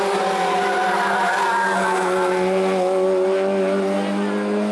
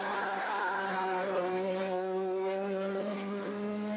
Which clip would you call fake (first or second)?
second